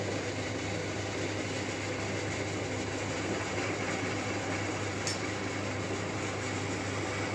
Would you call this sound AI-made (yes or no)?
no